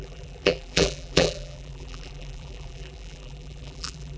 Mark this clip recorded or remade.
remade